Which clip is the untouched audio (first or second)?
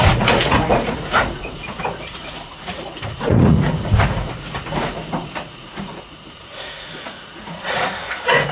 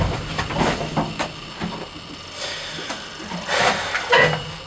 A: second